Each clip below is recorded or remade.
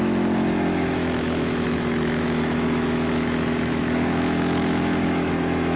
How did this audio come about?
remade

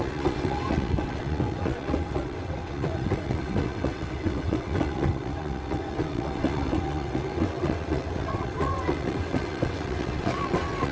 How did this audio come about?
remade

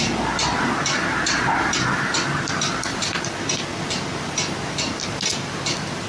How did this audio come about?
recorded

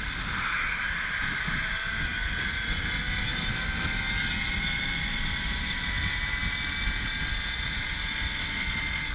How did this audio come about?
recorded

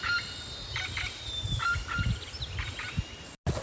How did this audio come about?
recorded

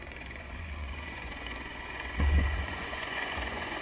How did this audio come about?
remade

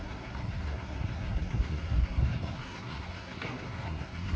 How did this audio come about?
remade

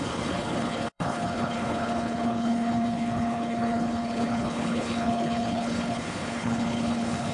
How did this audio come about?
remade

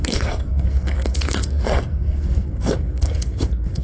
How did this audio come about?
remade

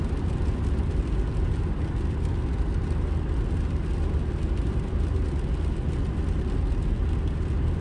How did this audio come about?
recorded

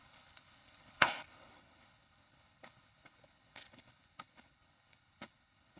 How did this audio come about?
remade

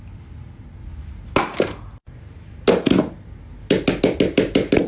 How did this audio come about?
recorded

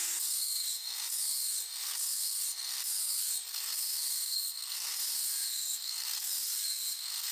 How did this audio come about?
remade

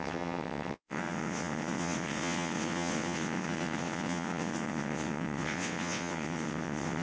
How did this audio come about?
remade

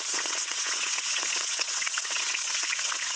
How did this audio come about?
remade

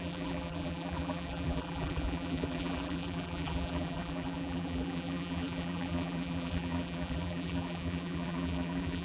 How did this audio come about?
remade